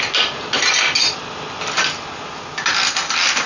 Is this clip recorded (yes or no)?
yes